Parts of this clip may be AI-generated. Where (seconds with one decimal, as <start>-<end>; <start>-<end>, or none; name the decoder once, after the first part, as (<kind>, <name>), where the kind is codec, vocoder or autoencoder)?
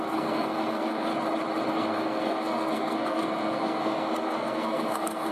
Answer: 0.0-1.1 (codec, SNAC); 1.7-5.3